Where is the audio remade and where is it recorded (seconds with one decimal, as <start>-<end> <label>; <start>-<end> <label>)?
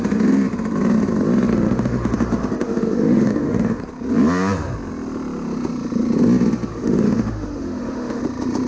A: 0.0-1.5 recorded; 1.5-3.8 remade; 3.8-6.7 recorded; 6.7-8.2 remade; 8.2-8.7 recorded